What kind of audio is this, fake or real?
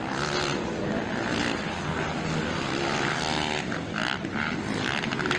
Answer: real